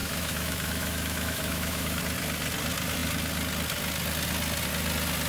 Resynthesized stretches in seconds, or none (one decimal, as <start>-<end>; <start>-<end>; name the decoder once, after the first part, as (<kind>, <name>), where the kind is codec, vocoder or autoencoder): 0.0-2.0 (autoencoder, DAC-VAE)